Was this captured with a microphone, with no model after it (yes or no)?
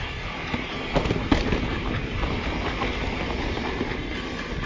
yes